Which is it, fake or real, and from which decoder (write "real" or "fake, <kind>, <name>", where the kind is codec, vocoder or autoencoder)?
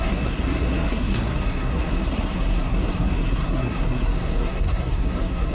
fake, codec, SNAC